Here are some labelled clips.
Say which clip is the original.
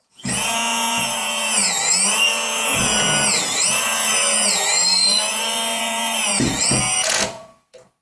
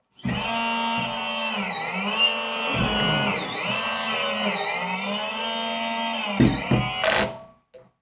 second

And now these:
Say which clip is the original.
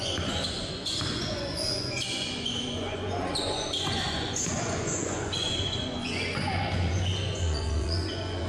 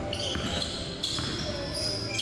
second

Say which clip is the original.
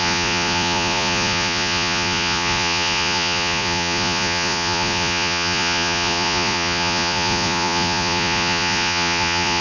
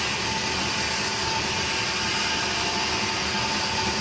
second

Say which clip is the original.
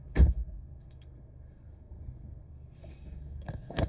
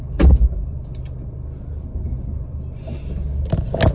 second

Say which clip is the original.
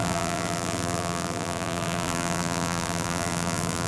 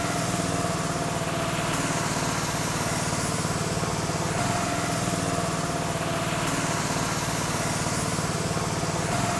second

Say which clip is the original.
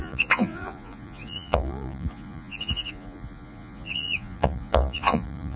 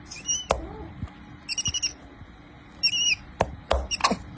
second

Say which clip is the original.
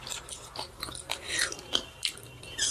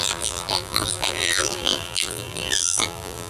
first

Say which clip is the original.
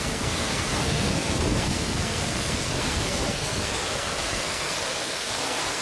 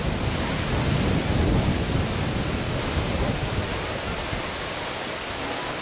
second